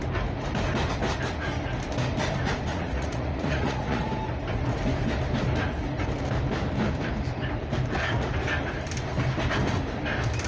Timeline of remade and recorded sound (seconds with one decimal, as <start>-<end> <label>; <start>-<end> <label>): 0.0-2.7 recorded; 2.7-4.1 remade; 4.1-10.5 recorded

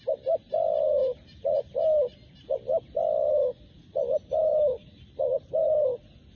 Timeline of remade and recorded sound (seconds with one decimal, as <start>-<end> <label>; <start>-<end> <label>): 0.0-6.4 recorded

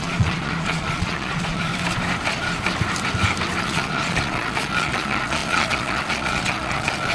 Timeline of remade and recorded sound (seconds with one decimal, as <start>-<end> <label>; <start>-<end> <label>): 0.0-1.7 remade; 1.7-3.6 recorded; 3.6-7.1 remade

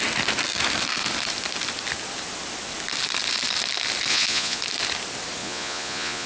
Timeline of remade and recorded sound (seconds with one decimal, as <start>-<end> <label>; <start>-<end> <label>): 0.0-4.1 recorded; 4.1-4.6 remade; 4.6-5.4 recorded; 5.4-6.3 remade

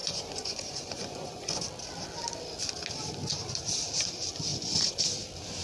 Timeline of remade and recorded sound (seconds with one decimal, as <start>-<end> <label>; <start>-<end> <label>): 0.0-1.6 remade; 1.6-4.5 recorded; 4.5-5.0 remade; 5.0-5.6 recorded

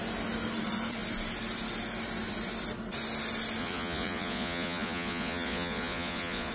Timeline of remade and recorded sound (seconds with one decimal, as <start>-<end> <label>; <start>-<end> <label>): 0.0-3.6 recorded; 3.6-6.5 remade